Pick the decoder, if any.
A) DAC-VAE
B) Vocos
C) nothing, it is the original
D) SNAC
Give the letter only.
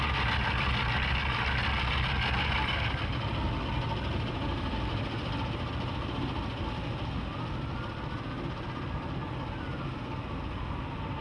C